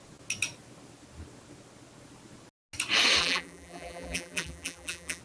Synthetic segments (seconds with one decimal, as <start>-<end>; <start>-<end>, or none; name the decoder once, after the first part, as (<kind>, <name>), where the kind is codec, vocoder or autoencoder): 3.2-5.2 (vocoder, BigVGAN v2)